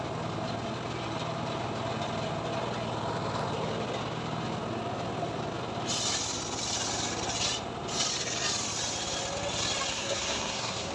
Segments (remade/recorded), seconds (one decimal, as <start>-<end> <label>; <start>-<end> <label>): 0.0-9.9 recorded; 9.9-10.9 remade